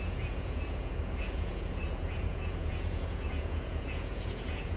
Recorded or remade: remade